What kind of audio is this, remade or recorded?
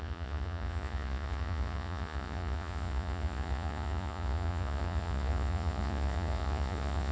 remade